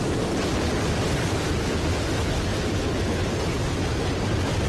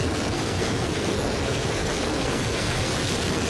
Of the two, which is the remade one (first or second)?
second